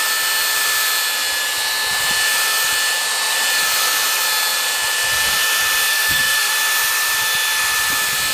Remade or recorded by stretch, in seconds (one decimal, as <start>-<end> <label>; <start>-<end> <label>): 0.0-5.9 recorded; 5.9-6.5 remade; 6.5-8.3 recorded